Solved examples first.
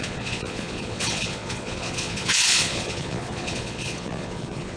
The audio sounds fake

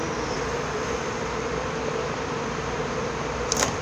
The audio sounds fake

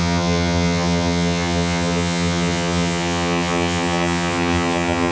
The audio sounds fake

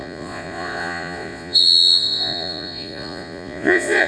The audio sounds fake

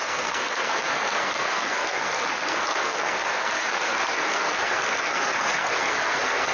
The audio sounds fake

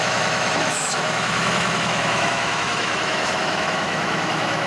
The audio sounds fake